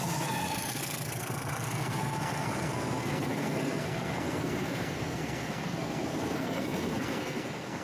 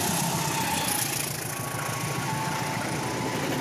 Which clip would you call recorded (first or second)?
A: second